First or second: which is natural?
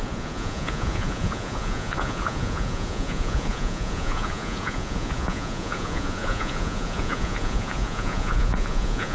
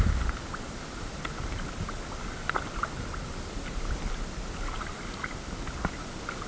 second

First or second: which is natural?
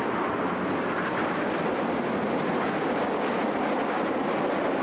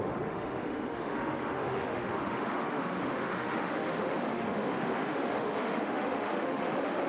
first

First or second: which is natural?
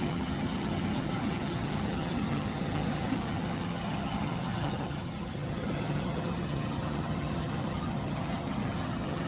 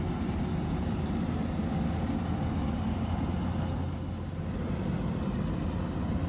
second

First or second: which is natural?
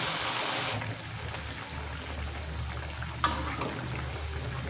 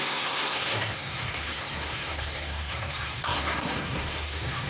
first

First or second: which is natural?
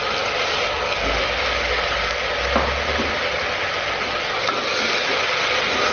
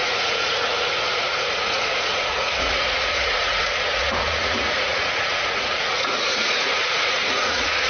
first